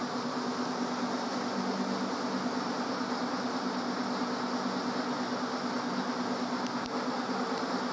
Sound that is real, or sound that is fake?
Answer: real